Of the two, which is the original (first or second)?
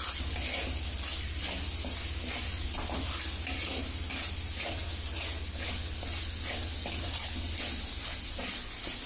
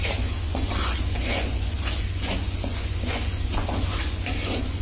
first